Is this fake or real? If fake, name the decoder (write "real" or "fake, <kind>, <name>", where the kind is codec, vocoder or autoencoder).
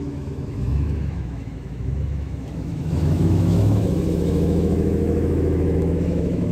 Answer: fake, autoencoder, DAC-VAE